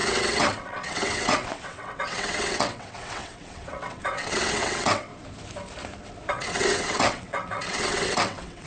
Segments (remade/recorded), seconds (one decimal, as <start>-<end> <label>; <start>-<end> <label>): 0.0-5.1 remade; 5.1-6.3 recorded; 6.3-8.7 remade